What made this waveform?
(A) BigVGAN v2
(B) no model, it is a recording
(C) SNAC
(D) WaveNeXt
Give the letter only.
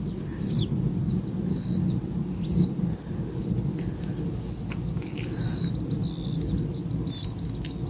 B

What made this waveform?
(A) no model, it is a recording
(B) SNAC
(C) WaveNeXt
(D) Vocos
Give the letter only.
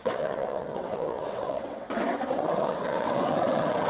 C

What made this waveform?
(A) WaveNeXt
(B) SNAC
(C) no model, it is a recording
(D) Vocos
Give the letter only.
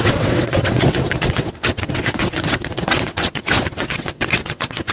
A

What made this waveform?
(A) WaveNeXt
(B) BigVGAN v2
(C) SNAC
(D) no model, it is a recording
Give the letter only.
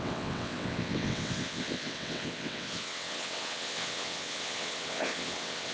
A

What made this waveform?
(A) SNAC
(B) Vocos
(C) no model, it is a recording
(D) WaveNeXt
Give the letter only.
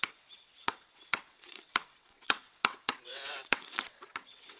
D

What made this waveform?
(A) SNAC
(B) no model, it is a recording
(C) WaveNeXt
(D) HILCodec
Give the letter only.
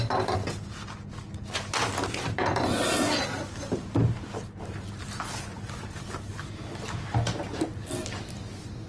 B